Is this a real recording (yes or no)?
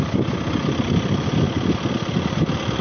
yes